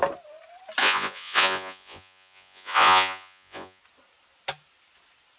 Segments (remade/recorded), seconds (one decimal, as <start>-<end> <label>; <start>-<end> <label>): 0.0-0.8 recorded; 0.8-3.8 remade; 3.8-5.4 recorded

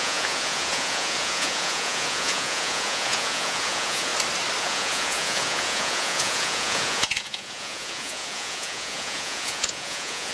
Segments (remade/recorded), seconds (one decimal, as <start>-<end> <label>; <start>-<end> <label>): 0.0-4.1 remade; 4.1-4.6 recorded; 4.6-10.3 remade

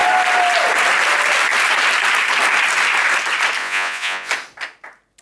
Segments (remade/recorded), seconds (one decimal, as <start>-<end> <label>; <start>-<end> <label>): 0.0-3.6 recorded; 3.6-4.3 remade; 4.3-5.2 recorded

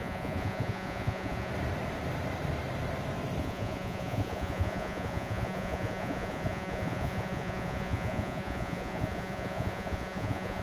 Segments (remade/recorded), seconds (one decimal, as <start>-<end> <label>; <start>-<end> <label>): 0.0-1.5 remade; 1.5-3.4 recorded; 3.4-10.6 remade

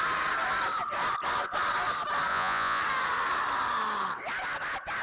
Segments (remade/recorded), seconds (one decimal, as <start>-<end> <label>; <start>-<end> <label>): 0.0-2.3 recorded; 2.3-2.8 remade; 2.8-5.0 recorded